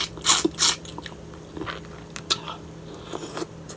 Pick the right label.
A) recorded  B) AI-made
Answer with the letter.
A